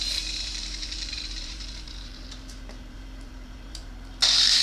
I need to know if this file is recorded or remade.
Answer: remade